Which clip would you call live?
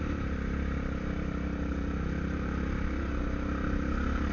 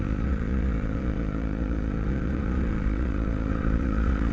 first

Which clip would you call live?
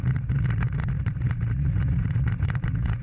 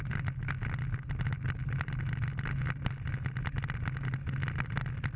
second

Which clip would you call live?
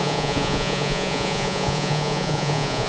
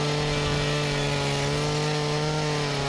second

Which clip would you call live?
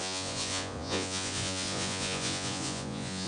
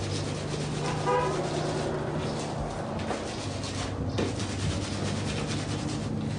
second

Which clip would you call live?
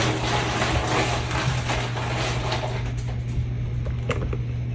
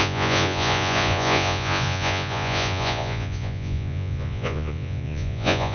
first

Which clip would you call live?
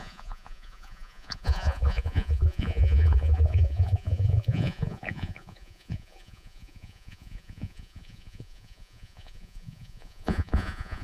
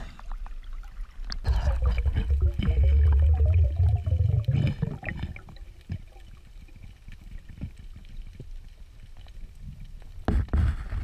second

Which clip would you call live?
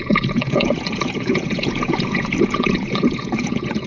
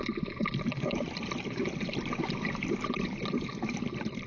second